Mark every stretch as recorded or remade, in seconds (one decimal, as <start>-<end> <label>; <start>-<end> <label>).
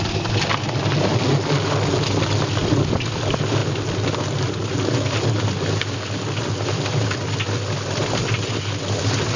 0.0-9.4 recorded